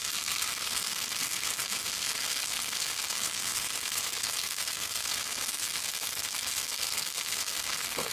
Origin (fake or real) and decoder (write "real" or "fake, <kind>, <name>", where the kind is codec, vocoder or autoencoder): fake, codec, SNAC